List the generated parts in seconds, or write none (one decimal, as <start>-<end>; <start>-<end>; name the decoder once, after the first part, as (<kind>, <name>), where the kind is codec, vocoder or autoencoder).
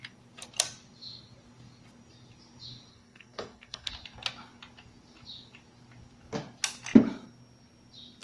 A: 2.9-3.9 (codec, SNAC)